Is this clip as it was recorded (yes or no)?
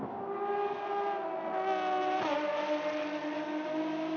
yes